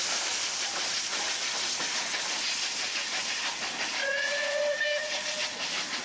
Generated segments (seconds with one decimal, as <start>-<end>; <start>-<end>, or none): 4.0-4.6